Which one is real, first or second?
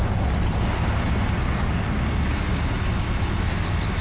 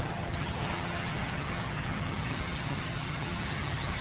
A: first